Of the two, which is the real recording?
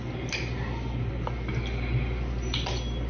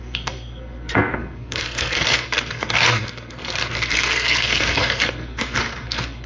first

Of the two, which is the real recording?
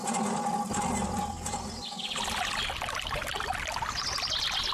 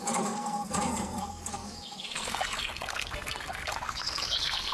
first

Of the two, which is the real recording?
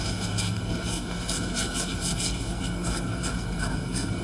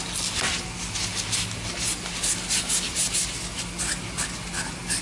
second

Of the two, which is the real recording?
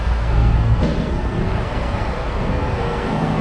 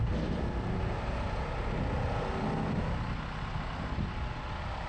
second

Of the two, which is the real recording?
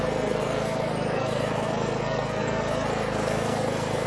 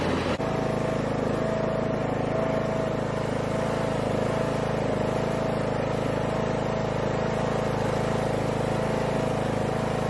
second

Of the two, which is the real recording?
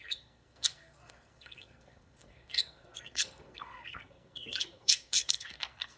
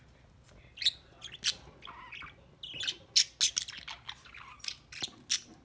second